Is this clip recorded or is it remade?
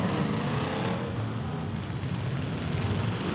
recorded